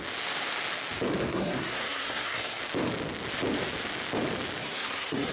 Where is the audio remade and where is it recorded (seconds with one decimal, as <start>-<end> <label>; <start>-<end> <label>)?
0.0-1.3 recorded; 1.3-2.6 remade; 2.6-4.6 recorded; 4.6-5.3 remade